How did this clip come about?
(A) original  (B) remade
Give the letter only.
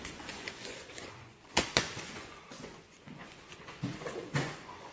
B